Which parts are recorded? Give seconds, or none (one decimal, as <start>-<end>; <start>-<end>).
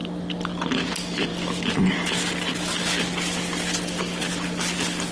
0.0-5.1